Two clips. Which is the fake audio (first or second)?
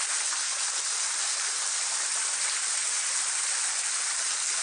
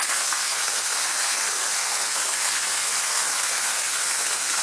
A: second